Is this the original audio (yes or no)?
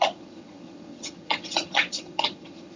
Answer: no